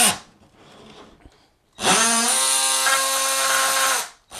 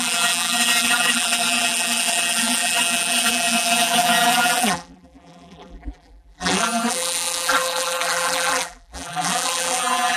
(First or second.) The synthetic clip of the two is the second